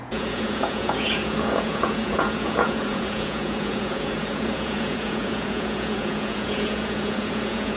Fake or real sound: fake